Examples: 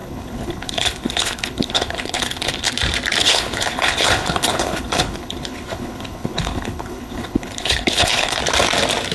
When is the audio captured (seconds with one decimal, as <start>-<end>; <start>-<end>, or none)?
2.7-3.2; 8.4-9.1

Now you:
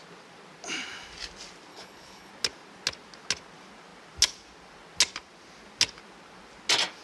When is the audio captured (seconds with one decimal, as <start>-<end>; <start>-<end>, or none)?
0.0-1.7; 2.3-7.0

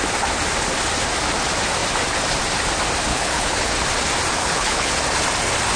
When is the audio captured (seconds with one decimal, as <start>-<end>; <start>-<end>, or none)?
0.0-3.1; 3.7-4.4; 4.9-5.8